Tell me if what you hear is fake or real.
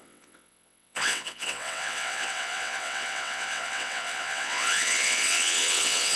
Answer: fake